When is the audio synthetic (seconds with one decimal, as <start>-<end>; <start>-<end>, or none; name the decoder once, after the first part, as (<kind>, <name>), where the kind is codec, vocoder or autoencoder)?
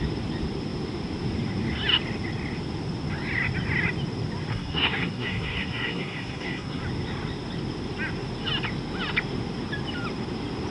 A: 4.5-6.8 (codec, SNAC)